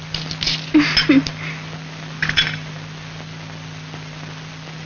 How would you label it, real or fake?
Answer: real